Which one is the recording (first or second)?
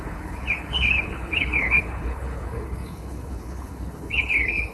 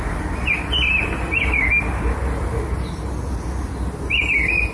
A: second